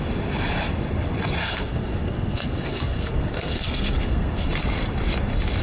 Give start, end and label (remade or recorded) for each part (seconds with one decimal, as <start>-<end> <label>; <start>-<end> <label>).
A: 0.0-1.4 recorded; 1.4-4.5 remade; 4.5-5.6 recorded